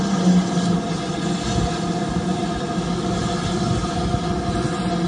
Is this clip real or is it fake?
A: real